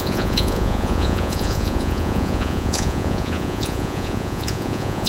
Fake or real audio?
fake